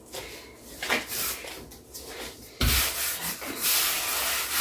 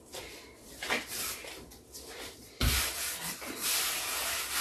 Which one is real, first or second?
first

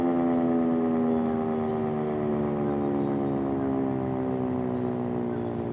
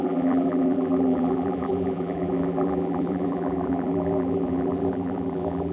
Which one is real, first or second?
first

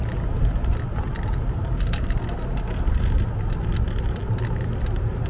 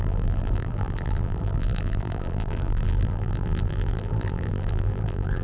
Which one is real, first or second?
first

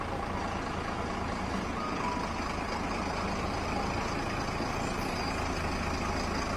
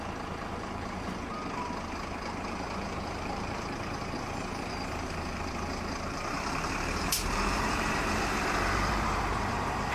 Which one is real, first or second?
first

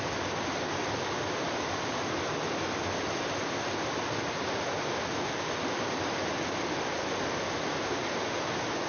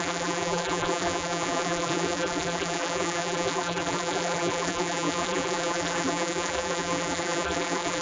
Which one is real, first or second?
first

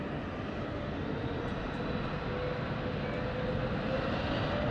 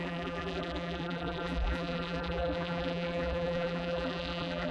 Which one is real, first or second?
first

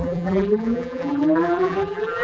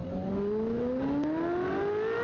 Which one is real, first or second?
second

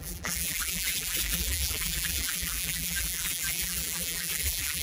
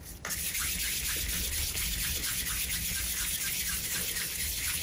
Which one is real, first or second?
second